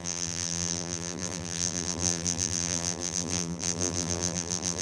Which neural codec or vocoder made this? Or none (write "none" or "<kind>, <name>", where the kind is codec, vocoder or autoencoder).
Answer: vocoder, BigVGAN v2